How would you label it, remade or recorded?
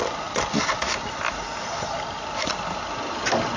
recorded